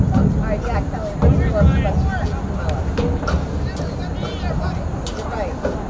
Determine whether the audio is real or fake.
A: real